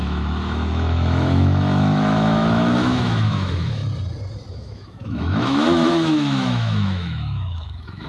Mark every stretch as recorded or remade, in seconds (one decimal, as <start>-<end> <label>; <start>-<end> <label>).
0.0-3.8 remade; 3.8-4.5 recorded; 4.5-8.1 remade